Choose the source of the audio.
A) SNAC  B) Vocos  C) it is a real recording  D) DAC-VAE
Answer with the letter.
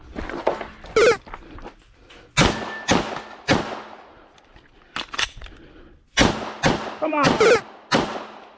C